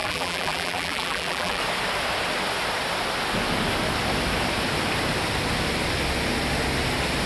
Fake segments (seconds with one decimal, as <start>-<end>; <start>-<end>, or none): 0.0-1.6